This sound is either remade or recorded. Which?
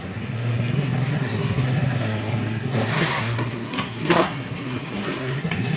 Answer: remade